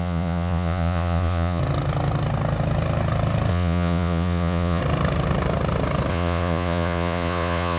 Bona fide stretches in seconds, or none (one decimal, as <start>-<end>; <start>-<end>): 1.6-3.5; 4.8-6.1